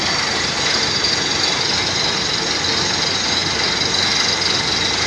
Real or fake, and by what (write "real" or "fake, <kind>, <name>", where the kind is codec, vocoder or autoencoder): real